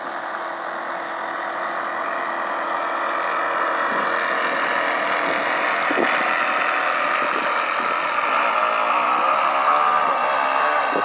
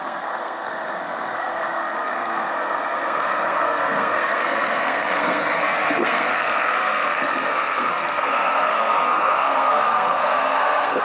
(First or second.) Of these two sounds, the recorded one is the first